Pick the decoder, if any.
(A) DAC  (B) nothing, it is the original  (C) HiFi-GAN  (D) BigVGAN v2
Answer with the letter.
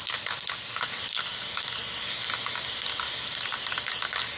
B